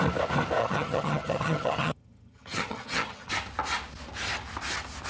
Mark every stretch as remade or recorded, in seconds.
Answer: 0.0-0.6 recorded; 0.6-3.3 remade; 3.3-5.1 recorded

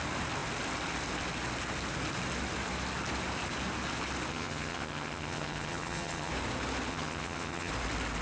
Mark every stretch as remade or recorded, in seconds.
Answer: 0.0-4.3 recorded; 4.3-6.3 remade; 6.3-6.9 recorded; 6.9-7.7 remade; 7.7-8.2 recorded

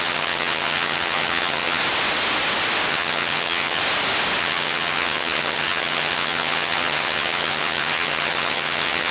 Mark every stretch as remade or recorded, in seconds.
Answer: 0.0-1.8 remade; 1.8-2.9 recorded; 2.9-3.8 remade; 3.8-4.4 recorded; 4.4-9.1 remade

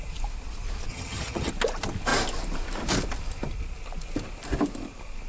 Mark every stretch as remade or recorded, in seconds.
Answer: 0.0-0.9 recorded; 0.9-1.5 remade; 1.5-5.3 recorded

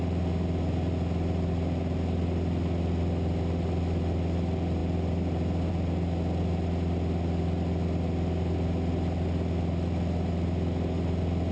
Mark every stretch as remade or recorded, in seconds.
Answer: 0.0-11.5 recorded

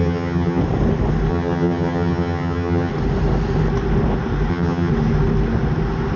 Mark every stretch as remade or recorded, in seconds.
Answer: 0.0-0.6 remade; 0.6-1.3 recorded; 1.3-2.9 remade; 2.9-4.5 recorded; 4.5-4.9 remade; 4.9-6.2 recorded